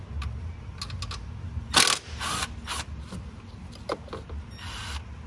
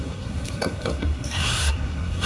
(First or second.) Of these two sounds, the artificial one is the second